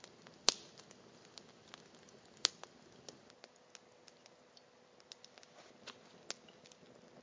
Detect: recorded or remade recorded